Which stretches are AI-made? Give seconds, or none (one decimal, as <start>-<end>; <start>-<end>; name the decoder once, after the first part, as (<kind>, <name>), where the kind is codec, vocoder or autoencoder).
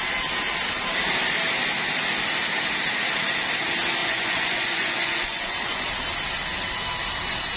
4.0-5.9 (vocoder, Vocos)